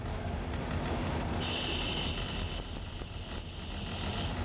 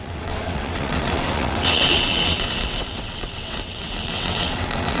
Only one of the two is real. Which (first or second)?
first